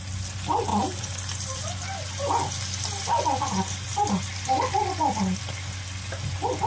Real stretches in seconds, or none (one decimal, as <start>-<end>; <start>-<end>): 0.0-6.7